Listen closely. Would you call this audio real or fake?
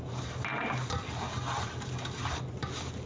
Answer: real